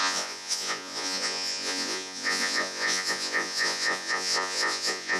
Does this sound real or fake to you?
fake